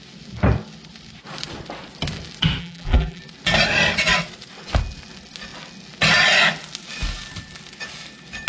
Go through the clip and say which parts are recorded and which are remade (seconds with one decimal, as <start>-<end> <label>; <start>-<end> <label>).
0.0-2.6 recorded; 2.6-3.2 remade; 3.2-8.5 recorded